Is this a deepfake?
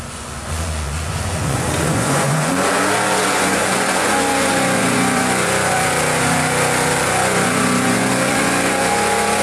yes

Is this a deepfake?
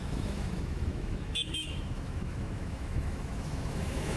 yes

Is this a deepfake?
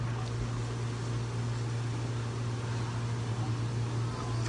no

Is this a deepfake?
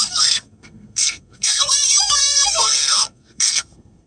yes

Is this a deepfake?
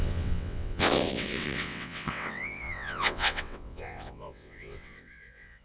yes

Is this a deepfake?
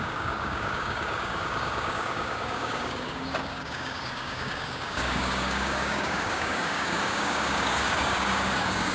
yes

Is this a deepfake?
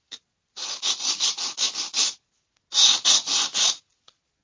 no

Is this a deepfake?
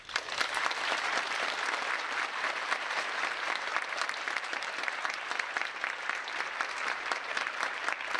yes